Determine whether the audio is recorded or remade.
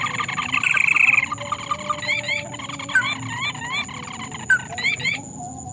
recorded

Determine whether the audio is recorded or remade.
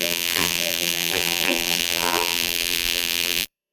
remade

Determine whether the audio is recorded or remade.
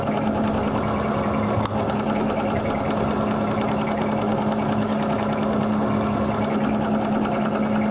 recorded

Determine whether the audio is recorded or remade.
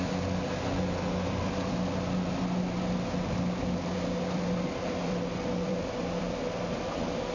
remade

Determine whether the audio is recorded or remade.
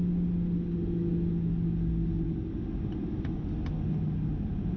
recorded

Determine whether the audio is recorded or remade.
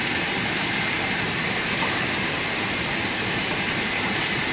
remade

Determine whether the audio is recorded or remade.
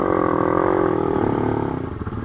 remade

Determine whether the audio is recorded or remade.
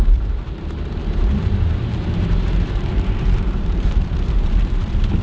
remade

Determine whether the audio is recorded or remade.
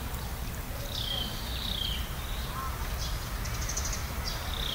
recorded